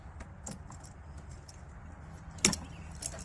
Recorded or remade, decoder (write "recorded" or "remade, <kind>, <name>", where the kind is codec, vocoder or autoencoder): recorded